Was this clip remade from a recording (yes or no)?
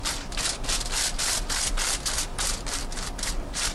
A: no